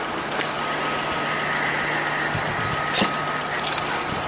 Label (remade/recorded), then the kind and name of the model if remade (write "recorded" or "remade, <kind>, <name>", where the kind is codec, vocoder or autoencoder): recorded